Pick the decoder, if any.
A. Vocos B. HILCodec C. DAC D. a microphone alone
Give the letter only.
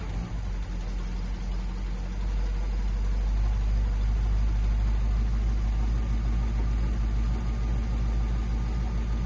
D